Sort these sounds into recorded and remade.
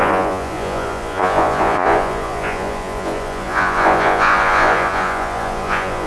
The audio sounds remade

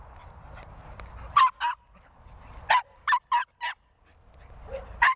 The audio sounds recorded